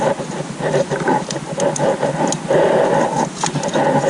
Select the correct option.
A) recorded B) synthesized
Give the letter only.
A